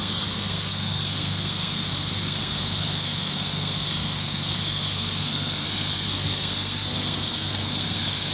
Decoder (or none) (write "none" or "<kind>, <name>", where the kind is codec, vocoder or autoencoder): codec, SNAC